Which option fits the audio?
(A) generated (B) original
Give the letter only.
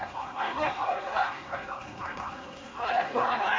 A